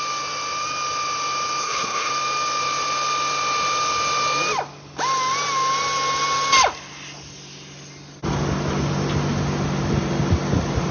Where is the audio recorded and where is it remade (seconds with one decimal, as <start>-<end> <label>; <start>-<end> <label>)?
0.0-1.6 recorded; 1.6-2.1 remade; 2.1-10.9 recorded